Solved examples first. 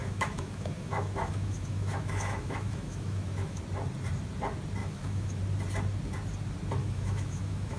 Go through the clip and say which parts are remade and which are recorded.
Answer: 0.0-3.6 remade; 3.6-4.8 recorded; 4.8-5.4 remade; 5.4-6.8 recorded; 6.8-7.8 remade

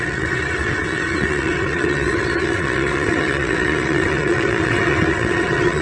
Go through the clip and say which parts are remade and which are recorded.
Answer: 0.0-5.8 remade